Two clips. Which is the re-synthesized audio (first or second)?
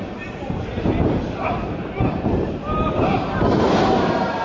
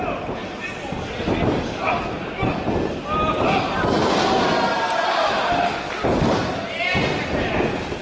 first